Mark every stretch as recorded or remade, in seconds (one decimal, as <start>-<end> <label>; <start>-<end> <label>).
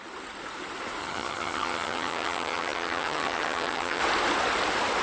0.0-1.0 recorded; 1.0-4.0 remade; 4.0-5.0 recorded